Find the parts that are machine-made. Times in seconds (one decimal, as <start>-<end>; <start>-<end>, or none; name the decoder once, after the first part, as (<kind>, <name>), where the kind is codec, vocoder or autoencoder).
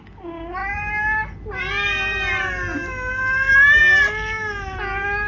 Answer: none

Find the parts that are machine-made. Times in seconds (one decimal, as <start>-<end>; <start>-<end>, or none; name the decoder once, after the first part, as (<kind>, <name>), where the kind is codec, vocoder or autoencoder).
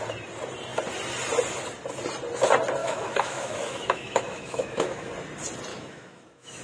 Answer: 2.8-5.1 (autoencoder, DAC-VAE); 5.7-6.6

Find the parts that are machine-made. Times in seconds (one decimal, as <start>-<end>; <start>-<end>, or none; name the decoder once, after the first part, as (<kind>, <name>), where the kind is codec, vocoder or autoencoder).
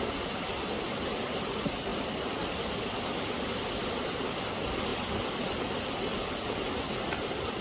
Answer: none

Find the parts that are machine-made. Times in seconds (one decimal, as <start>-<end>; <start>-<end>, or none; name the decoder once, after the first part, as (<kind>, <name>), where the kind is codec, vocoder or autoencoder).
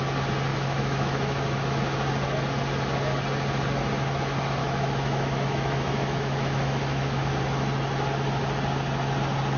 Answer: 0.5-1.8 (autoencoder, DAC-VAE); 4.6-7.3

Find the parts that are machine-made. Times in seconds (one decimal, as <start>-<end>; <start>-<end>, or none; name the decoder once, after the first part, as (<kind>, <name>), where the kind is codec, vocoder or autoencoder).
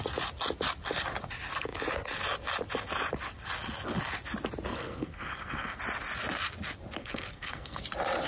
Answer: 4.7-5.8 (codec, SNAC); 7.0-7.8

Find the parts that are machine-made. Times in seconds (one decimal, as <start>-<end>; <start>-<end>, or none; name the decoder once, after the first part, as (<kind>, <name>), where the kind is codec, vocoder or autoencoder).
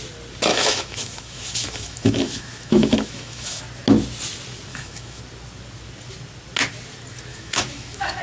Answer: 0.5-3.6 (autoencoder, DAC-VAE); 4.7-5.2; 7.3-8.2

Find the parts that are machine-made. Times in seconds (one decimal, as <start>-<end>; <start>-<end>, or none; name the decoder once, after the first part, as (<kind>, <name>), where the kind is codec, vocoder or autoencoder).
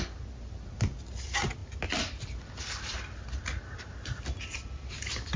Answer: none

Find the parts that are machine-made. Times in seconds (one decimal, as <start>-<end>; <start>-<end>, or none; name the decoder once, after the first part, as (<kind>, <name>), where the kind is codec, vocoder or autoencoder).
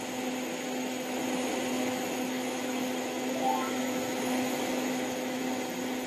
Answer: 0.5-1.2 (autoencoder, DAC-VAE); 1.7-5.4